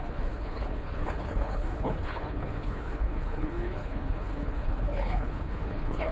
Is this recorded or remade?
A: remade